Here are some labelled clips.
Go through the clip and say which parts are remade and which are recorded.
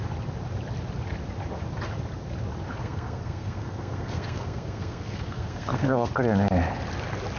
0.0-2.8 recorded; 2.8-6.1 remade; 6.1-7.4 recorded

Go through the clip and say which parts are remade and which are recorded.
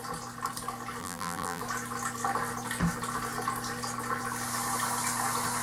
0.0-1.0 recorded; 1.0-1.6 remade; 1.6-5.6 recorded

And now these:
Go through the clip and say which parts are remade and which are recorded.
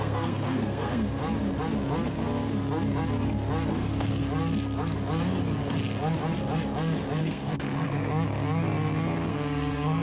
0.0-1.2 remade; 1.2-3.7 recorded; 3.7-4.2 remade; 4.2-7.2 recorded; 7.2-8.1 remade; 8.1-9.3 recorded; 9.3-10.0 remade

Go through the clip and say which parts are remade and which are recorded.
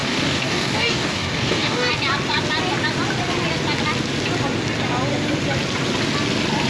0.0-1.9 remade; 1.9-6.7 recorded